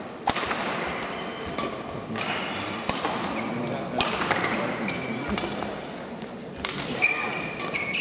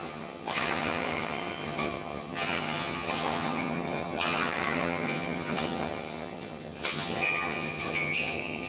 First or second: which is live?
first